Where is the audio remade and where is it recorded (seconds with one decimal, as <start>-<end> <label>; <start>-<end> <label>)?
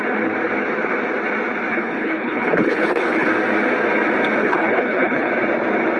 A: 0.0-1.7 recorded; 1.7-3.3 remade; 3.3-4.4 recorded; 4.4-5.3 remade; 5.3-6.0 recorded